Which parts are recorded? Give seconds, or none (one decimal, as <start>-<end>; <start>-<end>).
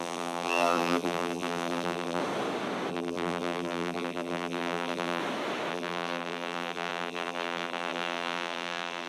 2.2-2.9; 5.2-5.7